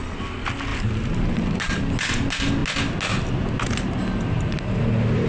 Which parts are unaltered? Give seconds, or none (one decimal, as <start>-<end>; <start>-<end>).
0.0-0.7; 1.6-5.3